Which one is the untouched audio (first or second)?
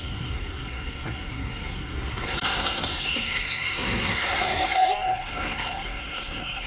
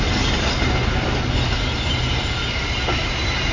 second